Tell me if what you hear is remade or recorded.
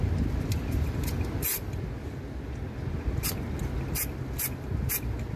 recorded